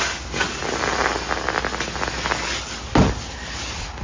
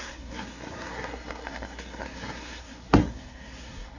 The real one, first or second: first